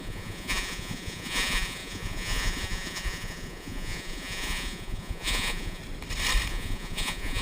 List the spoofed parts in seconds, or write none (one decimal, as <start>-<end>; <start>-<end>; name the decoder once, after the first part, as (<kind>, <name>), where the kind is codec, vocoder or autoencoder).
0.0-5.8 (vocoder, Vocos); 6.5-7.4